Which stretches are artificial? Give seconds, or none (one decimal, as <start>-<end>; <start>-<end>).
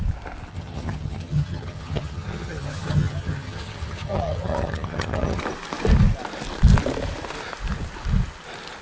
0.5-5.4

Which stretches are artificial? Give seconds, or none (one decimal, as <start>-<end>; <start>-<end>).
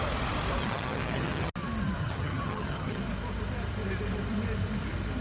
0.6-1.5; 2.0-3.0